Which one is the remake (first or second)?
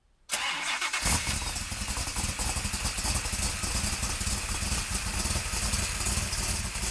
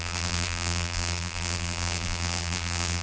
second